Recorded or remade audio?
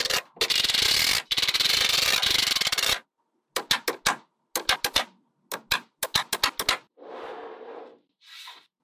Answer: recorded